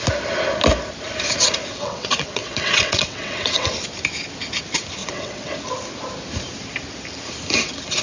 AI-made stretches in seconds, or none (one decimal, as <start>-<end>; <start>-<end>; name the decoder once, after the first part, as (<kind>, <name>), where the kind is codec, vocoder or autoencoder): 1.7-3.7 (vocoder, WaveNeXt); 5.0-5.5